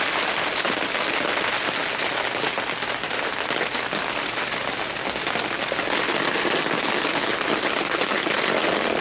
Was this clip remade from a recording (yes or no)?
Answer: no